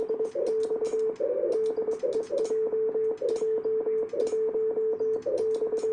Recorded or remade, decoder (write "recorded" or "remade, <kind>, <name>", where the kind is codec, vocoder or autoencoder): recorded